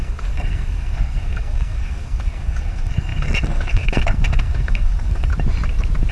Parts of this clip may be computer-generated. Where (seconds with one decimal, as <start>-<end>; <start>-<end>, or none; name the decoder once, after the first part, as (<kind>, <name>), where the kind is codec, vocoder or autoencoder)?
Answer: 0.0-5.3 (codec, SNAC)